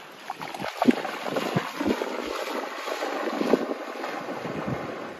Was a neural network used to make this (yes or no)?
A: no